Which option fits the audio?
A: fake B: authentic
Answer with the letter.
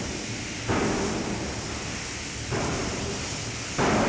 B